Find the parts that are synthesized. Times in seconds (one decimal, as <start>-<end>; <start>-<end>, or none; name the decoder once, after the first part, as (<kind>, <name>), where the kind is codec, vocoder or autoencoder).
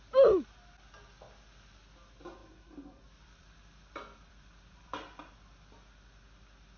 2.4-5.3 (vocoder, BigVGAN v2)